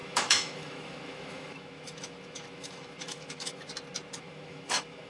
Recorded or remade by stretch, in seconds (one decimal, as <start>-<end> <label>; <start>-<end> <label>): 0.0-3.7 remade; 3.7-4.2 recorded; 4.2-5.1 remade